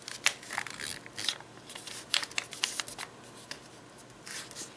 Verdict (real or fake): real